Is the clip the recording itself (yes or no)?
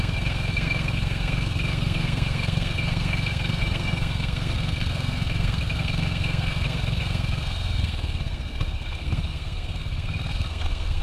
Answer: no